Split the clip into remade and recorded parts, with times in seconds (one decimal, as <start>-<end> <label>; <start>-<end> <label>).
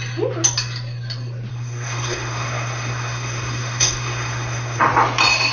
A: 0.0-1.5 recorded; 1.5-4.8 remade; 4.8-5.5 recorded